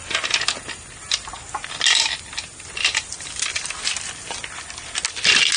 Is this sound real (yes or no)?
yes